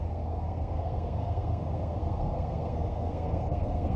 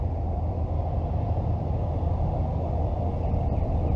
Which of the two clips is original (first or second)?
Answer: second